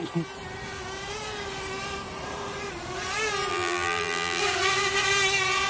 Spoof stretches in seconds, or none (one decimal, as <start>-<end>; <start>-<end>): 3.5-4.4